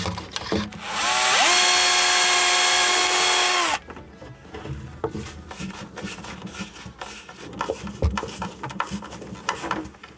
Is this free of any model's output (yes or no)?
yes